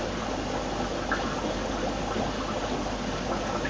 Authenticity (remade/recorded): recorded